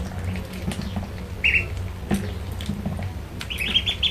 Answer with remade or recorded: recorded